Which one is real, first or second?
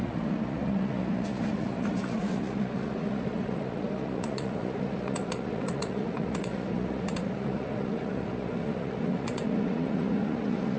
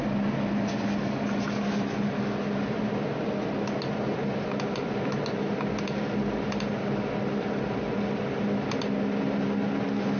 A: second